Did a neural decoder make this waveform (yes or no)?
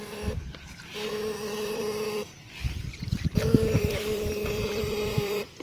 yes